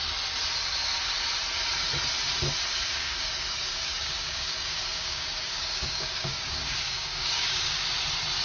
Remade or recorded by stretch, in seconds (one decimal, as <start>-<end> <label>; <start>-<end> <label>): 0.0-2.9 recorded; 2.9-7.9 remade; 7.9-8.4 recorded

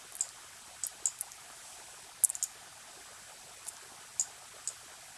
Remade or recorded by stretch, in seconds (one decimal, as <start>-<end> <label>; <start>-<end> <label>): 0.0-5.2 recorded